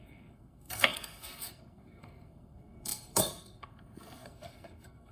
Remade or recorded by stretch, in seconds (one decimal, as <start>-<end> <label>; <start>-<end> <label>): 0.0-5.1 remade

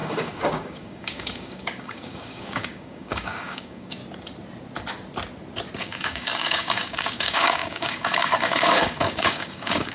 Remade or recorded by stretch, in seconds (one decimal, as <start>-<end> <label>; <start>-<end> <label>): 0.0-4.0 remade; 4.0-5.8 recorded; 5.8-9.9 remade

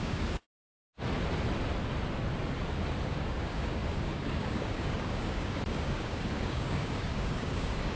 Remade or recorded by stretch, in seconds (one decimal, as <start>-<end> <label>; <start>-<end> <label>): 0.0-0.4 remade; 0.4-3.1 recorded; 3.1-8.0 remade

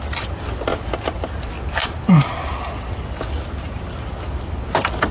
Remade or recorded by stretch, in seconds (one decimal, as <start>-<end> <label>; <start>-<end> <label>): 0.0-5.1 recorded

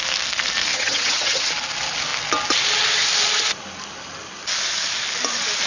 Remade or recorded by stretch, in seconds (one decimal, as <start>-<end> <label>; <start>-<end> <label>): 0.0-0.7 recorded; 0.7-1.5 remade; 1.5-5.7 recorded

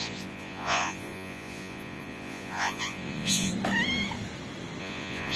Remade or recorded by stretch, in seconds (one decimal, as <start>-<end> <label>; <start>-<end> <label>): 0.0-3.5 remade; 3.5-4.8 recorded; 4.8-5.4 remade

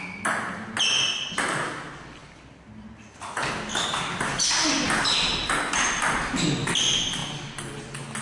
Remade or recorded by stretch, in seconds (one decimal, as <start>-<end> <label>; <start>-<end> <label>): 0.0-8.2 recorded